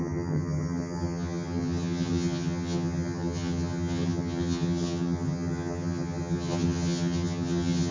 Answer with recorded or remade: remade